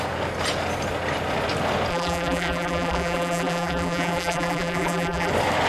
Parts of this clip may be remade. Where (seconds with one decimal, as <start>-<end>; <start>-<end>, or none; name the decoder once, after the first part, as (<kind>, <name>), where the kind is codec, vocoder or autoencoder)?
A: 1.9-5.3 (vocoder, BigVGAN v2)